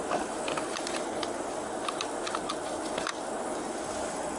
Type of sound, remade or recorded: recorded